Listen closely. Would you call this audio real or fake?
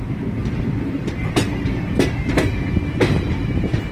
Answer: real